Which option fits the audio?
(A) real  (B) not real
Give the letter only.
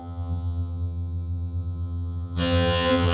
B